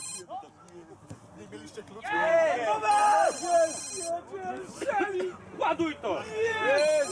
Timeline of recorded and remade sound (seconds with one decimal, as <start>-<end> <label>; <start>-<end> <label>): 0.0-7.1 recorded